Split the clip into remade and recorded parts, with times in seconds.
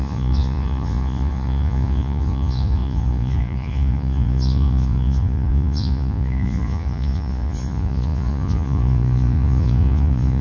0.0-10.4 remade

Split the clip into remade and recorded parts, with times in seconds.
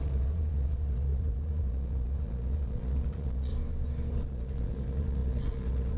0.0-3.5 remade; 3.5-4.2 recorded; 4.2-6.0 remade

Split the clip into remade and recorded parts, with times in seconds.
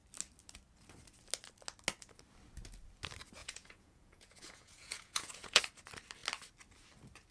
0.0-3.4 recorded; 3.4-5.6 remade; 5.6-7.3 recorded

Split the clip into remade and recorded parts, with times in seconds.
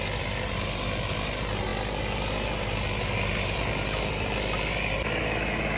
0.0-5.8 recorded